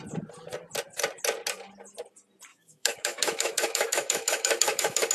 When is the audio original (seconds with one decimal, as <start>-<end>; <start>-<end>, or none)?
0.0-2.5